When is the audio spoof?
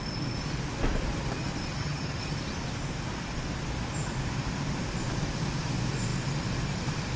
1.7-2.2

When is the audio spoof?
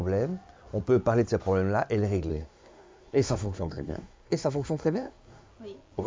2.3-5.5